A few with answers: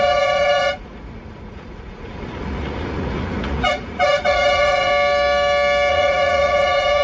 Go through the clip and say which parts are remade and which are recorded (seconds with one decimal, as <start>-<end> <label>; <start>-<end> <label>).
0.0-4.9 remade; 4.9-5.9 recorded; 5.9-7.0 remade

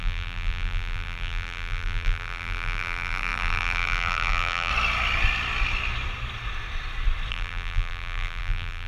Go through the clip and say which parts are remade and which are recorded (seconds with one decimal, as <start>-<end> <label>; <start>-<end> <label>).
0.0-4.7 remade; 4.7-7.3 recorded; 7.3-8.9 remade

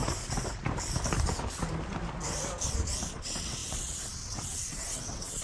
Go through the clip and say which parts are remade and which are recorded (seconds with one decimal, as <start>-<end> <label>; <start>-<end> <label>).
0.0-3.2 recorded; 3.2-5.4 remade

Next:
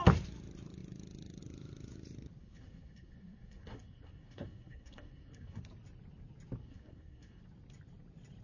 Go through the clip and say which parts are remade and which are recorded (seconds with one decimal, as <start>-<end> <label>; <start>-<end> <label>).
0.0-2.4 recorded; 2.4-5.6 remade; 5.6-6.6 recorded; 6.6-7.4 remade; 7.4-8.4 recorded

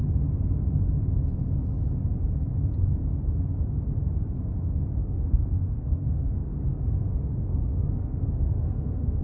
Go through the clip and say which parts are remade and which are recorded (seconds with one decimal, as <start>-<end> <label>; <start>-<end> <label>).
0.0-5.0 recorded; 5.0-9.2 remade

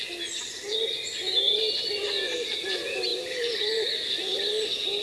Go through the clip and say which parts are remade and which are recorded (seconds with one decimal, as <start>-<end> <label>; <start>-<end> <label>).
0.0-3.1 recorded; 3.1-3.6 remade; 3.6-5.0 recorded

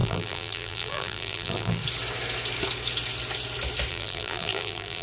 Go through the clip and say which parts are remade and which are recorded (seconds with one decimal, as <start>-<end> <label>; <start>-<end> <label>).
0.0-1.8 remade; 1.8-3.9 recorded; 3.9-5.0 remade

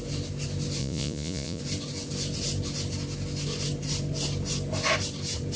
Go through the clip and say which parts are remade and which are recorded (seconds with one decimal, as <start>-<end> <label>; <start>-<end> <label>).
0.0-0.8 recorded; 0.8-1.6 remade; 1.6-5.6 recorded